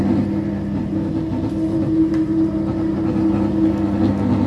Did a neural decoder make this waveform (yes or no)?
no